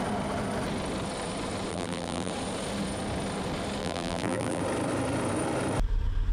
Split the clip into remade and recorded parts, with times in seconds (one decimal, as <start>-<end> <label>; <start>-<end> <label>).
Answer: 0.0-1.7 recorded; 1.7-2.3 remade; 2.3-3.8 recorded; 3.8-4.6 remade; 4.6-6.3 recorded